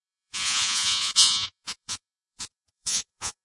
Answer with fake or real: fake